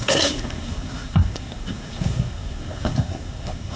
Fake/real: fake